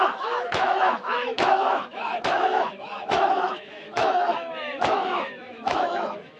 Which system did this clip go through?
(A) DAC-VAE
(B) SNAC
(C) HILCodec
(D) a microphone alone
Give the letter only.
A